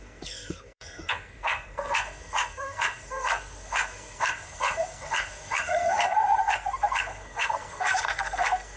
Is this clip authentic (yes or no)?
no